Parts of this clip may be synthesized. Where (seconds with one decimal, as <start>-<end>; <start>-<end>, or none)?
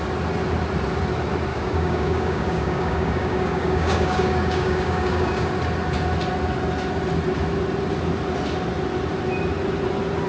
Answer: 1.5-5.5